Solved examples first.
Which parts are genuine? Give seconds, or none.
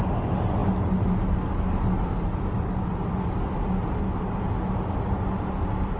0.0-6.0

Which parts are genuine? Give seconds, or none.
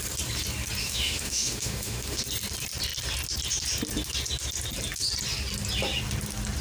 0.0-0.8; 2.2-6.6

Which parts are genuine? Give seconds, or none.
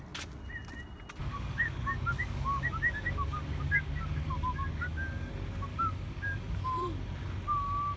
0.0-1.2; 5.3-5.7; 6.6-8.0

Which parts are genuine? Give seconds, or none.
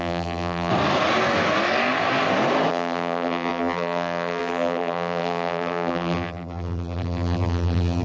0.7-2.7